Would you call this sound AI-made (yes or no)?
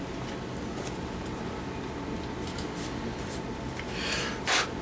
no